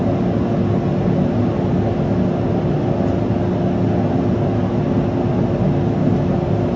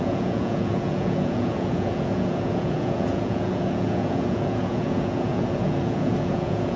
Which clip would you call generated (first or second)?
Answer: second